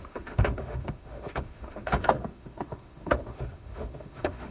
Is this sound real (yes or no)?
no